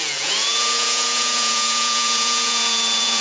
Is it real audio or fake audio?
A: fake